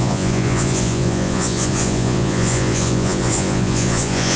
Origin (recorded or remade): remade